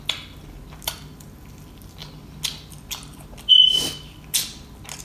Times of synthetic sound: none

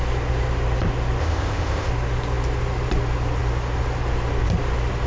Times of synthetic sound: 1.2-1.9

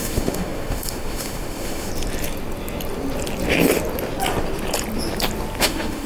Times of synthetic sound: 0.0-1.9; 5.6-6.1

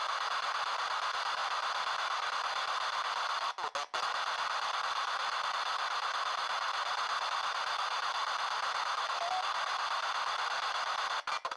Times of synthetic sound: none

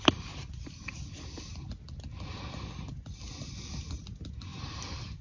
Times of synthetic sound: 4.5-5.2

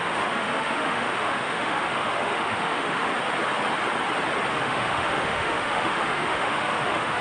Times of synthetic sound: 0.0-3.1; 4.5-7.2

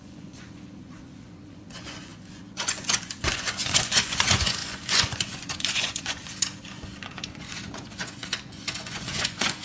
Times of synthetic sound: 0.0-9.6